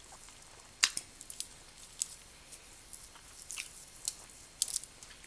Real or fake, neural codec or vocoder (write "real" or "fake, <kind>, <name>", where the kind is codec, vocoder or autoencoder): real